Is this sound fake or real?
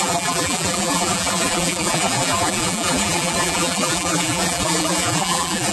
fake